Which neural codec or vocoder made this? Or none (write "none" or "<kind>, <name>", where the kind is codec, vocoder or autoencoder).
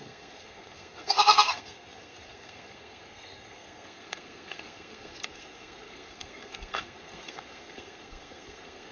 codec, SNAC